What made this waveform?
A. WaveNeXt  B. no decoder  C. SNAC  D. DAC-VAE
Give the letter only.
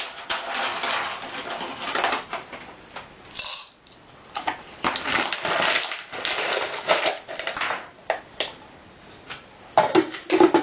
B